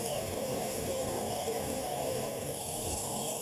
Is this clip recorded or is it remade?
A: remade